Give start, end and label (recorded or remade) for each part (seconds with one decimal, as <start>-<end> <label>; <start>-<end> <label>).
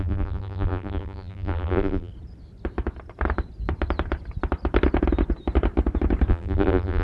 0.0-2.1 remade; 2.1-6.3 recorded; 6.3-7.0 remade